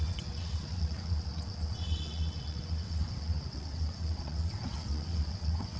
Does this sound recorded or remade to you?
remade